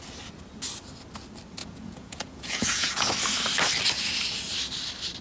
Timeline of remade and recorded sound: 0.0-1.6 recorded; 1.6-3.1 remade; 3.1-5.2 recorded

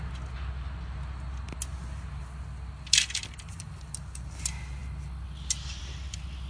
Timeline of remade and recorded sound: 0.0-6.5 recorded

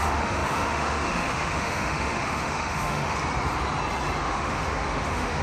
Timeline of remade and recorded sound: 0.0-3.2 remade; 3.2-4.2 recorded; 4.2-5.4 remade

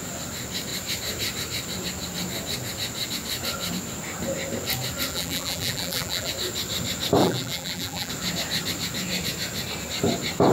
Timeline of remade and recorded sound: 0.0-5.1 recorded; 5.1-6.3 remade; 6.3-7.2 recorded; 7.2-8.1 remade; 8.1-10.5 recorded

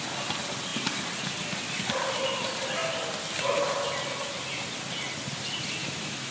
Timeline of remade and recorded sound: 0.0-5.8 recorded; 5.8-6.3 remade

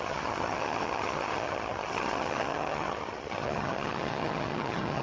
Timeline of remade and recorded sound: 0.0-5.0 remade

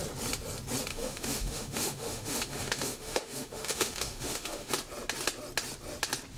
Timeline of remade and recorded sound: 0.0-0.9 recorded; 0.9-4.7 remade; 4.7-6.4 recorded

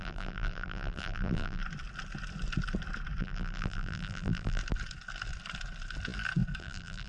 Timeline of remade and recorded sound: 0.0-1.6 remade; 1.6-3.2 recorded; 3.2-4.6 remade; 4.6-6.6 recorded; 6.6-7.1 remade